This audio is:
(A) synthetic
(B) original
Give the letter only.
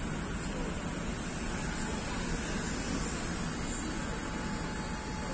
B